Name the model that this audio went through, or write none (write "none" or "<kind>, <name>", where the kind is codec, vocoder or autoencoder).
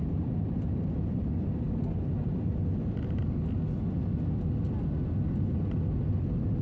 none